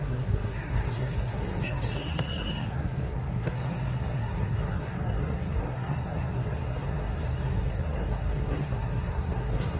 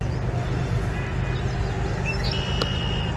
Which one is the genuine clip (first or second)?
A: second